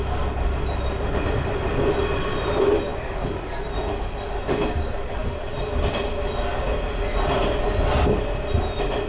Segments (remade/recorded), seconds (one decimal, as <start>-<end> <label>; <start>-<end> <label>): 0.0-9.1 recorded